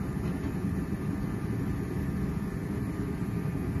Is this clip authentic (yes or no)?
yes